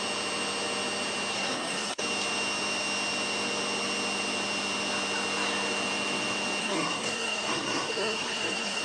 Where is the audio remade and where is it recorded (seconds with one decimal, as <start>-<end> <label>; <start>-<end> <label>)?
0.0-1.3 recorded; 1.3-2.0 remade; 2.0-6.6 recorded; 6.6-8.8 remade